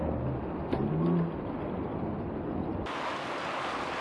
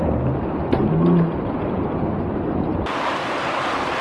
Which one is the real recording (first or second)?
first